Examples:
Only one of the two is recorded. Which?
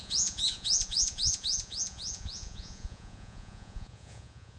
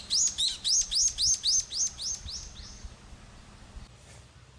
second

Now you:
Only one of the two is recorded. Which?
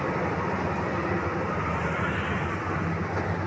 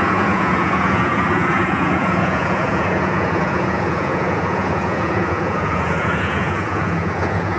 first